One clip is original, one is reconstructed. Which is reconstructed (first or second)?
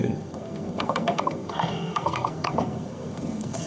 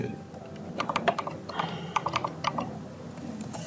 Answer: first